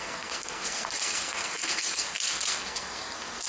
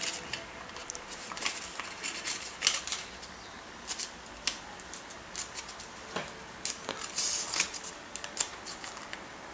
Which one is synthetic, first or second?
first